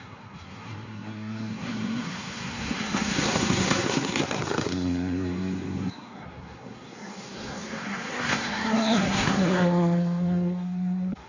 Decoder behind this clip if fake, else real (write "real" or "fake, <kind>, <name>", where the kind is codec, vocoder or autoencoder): fake, codec, SNAC